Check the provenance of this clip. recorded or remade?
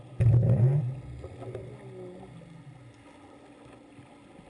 recorded